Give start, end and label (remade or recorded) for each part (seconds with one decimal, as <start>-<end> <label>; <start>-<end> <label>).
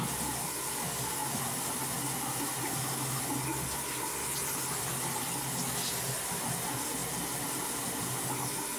0.0-8.8 recorded